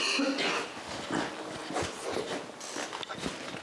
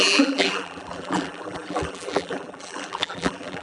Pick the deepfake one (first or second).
second